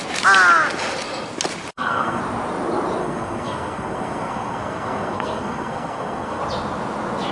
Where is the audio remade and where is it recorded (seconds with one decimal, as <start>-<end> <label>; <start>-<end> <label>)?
0.0-1.7 recorded; 1.7-2.2 remade; 2.2-3.0 recorded; 3.0-6.4 remade; 6.4-7.3 recorded